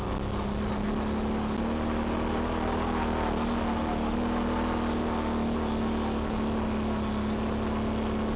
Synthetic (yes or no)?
no